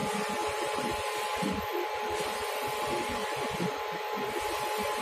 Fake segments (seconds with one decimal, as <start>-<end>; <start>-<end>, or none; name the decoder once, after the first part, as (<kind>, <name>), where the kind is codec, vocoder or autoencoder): none